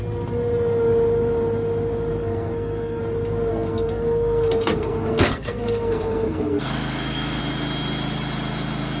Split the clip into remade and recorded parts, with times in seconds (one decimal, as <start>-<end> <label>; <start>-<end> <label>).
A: 0.0-2.2 recorded; 2.2-3.0 remade; 3.0-3.5 recorded; 3.5-7.4 remade; 7.4-9.0 recorded